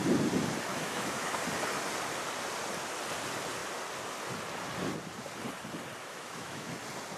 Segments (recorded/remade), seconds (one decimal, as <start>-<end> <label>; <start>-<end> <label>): 0.0-0.7 recorded; 0.7-1.3 remade; 1.3-6.0 recorded; 6.0-6.7 remade; 6.7-7.2 recorded